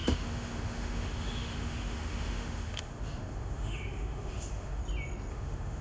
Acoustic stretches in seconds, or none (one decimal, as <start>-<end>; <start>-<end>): 4.8-5.3